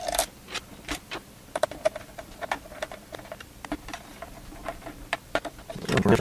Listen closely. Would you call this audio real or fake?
fake